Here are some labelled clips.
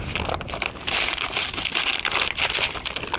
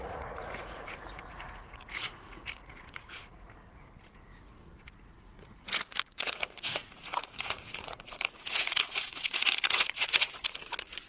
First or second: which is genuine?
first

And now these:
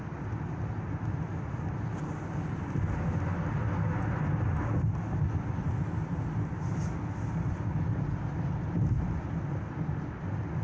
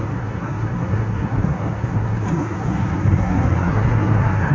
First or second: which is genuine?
first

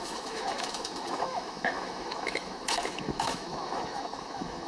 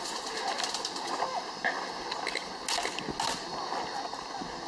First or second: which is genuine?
second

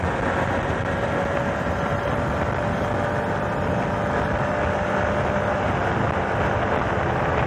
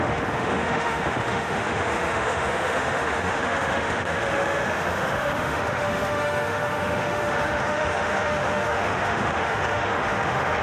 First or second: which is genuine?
first